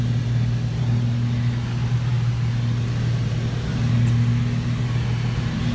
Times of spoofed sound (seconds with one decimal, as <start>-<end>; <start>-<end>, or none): none